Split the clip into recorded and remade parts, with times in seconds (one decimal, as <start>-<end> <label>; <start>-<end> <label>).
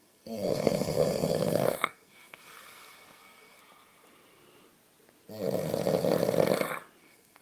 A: 0.0-3.6 remade; 3.6-7.0 recorded; 7.0-7.4 remade